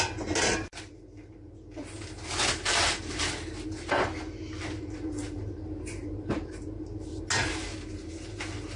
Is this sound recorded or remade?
recorded